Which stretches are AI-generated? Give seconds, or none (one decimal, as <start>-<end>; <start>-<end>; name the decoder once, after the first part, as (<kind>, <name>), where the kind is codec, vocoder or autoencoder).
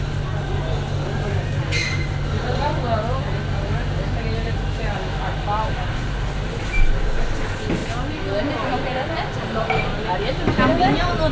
none